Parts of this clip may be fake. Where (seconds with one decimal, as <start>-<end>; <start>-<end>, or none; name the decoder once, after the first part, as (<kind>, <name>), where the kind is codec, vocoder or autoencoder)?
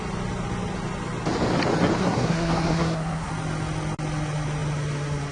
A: 2.0-3.3 (codec, SNAC)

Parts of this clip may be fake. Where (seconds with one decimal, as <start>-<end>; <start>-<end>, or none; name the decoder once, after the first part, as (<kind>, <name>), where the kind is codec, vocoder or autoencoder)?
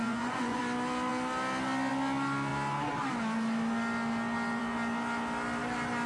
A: 0.0-0.6 (vocoder, Vocos)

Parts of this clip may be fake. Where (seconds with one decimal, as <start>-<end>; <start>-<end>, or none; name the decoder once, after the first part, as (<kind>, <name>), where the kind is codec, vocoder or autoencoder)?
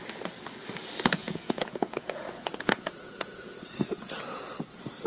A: 1.2-4.1 (vocoder, Vocos)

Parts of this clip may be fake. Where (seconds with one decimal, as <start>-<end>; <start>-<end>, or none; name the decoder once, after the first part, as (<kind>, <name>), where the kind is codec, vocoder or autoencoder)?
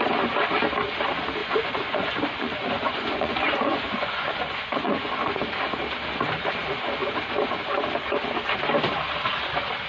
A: 1.4-5.1 (vocoder, Vocos)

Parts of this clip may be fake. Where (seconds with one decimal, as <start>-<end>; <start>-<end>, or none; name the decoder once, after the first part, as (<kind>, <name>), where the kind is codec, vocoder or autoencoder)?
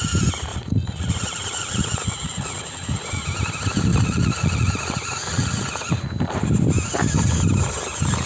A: 0.5-3.2 (vocoder, Vocos); 3.9-6.1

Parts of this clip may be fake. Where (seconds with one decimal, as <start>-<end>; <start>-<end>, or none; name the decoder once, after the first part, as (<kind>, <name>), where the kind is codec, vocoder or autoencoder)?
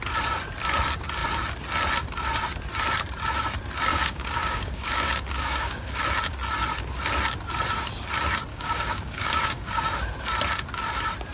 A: 3.9-6.0 (codec, DAC); 8.5-9.7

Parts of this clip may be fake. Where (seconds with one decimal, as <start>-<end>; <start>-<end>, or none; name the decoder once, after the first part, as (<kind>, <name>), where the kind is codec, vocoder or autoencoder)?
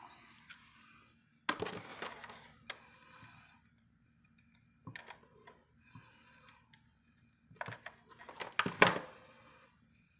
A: none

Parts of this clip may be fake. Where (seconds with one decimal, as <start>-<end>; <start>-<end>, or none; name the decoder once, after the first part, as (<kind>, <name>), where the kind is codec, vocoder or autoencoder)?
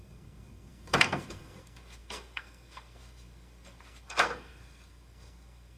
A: 0.0-5.8 (codec, SNAC)